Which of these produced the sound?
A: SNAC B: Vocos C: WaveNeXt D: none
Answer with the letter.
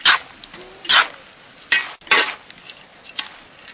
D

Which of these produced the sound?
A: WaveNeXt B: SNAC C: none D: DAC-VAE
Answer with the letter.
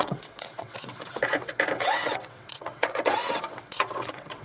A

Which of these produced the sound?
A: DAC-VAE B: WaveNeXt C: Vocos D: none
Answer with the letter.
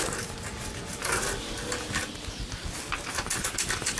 D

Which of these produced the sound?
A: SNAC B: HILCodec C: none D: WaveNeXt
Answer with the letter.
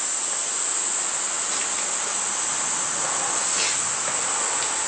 C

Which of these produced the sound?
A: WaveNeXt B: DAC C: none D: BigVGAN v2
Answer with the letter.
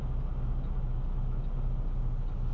C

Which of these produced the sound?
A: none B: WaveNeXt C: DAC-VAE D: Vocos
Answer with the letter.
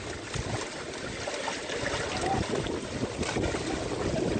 A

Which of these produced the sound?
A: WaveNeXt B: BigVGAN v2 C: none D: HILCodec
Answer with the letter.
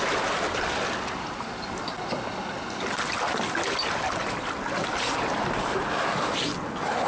C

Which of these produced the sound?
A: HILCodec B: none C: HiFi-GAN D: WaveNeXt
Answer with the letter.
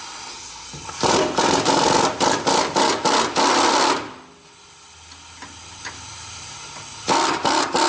B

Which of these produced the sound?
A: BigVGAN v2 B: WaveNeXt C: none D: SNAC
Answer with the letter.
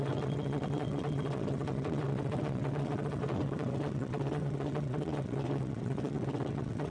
B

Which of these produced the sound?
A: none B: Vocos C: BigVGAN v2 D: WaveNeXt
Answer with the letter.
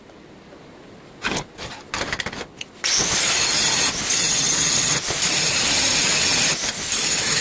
A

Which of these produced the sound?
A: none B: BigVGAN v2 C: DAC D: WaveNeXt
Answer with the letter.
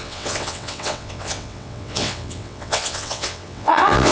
D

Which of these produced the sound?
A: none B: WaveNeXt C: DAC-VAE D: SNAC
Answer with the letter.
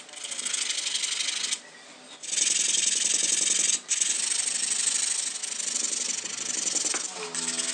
A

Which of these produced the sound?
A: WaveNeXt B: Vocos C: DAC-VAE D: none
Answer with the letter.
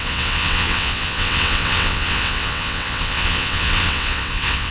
A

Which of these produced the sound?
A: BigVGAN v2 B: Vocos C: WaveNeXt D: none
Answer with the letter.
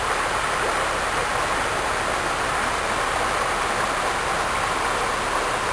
D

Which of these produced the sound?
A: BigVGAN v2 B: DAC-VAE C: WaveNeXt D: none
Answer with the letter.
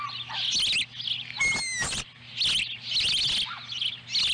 D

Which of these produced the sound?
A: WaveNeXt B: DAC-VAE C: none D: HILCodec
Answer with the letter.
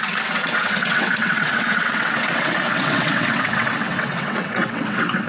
A